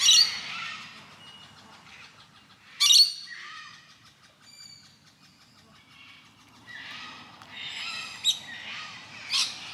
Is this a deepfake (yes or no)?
no